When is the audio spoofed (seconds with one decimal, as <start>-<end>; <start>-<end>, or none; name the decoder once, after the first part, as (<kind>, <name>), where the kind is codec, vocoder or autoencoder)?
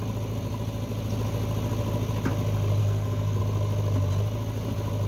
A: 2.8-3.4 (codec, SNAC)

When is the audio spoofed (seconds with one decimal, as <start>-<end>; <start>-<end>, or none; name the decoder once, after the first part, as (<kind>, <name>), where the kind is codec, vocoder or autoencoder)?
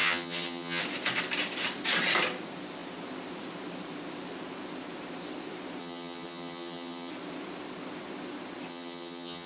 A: 0.0-0.8 (vocoder, HiFi-GAN); 5.8-7.1; 8.7-9.5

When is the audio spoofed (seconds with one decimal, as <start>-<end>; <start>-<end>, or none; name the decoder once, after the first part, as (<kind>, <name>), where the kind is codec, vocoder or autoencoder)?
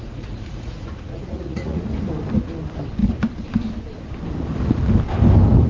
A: 0.0-1.8 (vocoder, Vocos)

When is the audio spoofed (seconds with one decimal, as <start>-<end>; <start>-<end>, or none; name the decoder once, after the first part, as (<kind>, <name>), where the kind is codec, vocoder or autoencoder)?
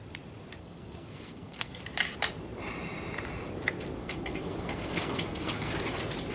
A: 0.6-1.8 (codec, SNAC); 4.0-5.7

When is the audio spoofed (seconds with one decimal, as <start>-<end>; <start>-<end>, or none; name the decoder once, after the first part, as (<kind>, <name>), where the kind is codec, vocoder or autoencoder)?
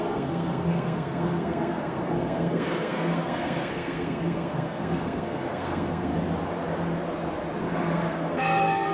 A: 0.0-6.1 (codec, SNAC); 7.6-8.9